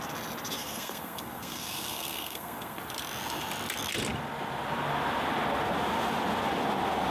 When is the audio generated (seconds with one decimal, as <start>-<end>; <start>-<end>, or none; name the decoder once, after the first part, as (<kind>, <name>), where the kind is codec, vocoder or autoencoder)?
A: 0.6-2.8 (codec, SNAC)